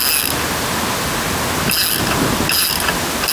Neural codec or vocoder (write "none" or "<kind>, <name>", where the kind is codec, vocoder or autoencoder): none